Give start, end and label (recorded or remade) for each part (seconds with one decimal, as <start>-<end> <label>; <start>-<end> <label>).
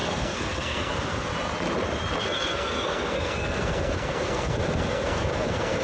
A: 0.0-1.3 remade; 1.3-2.2 recorded; 2.2-5.8 remade